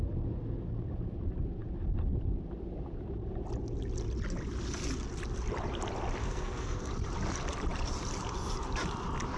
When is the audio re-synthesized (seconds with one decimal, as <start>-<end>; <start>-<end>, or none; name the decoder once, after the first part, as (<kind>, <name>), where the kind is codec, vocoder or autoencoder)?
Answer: 6.2-6.9 (codec, SNAC)